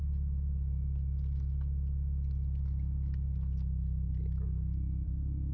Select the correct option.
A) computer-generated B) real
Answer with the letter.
B